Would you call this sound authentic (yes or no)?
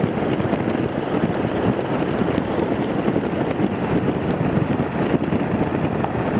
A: yes